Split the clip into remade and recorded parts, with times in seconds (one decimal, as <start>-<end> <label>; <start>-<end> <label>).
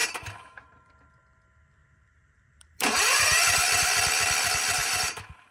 0.0-0.9 remade; 0.9-1.8 recorded; 1.8-2.9 remade; 2.9-4.8 recorded; 4.8-5.5 remade